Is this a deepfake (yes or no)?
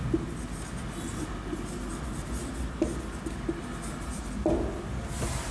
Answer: no